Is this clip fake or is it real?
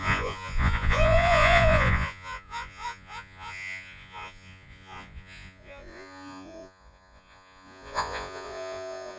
fake